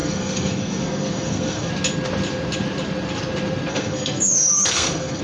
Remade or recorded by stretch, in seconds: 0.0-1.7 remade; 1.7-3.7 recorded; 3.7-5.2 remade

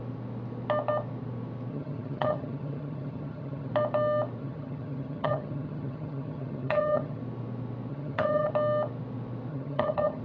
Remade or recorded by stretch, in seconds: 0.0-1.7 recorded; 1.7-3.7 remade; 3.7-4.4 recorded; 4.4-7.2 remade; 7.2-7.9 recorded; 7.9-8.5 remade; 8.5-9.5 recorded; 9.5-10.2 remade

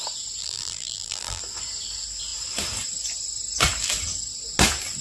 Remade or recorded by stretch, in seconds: 0.0-0.4 recorded; 0.4-1.4 remade; 1.4-5.0 recorded

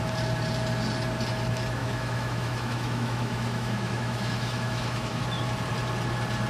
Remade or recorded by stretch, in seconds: 0.0-1.8 recorded; 1.8-5.2 remade; 5.2-6.5 recorded

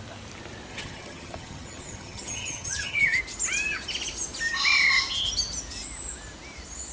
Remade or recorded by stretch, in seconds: 0.0-0.7 recorded; 0.7-3.2 remade; 3.2-6.9 recorded